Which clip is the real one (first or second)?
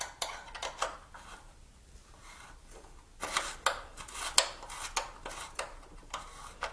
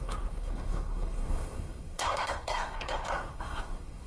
first